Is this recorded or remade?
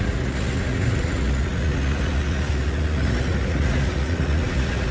remade